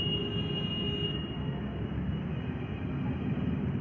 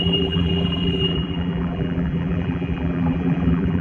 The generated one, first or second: second